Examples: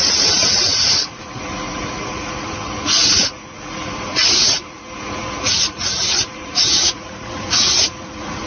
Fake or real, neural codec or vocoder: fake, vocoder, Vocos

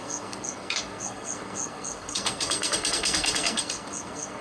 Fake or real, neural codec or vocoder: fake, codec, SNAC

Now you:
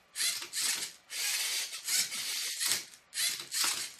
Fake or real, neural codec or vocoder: real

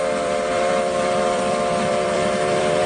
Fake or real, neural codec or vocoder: fake, vocoder, BigVGAN v2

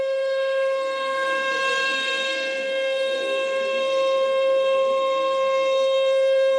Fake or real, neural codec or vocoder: fake, codec, SNAC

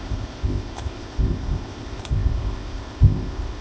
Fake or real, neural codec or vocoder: fake, codec, ZipCodec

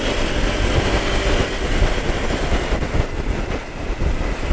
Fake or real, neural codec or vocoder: real